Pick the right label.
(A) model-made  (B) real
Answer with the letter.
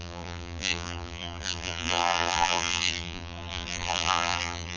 A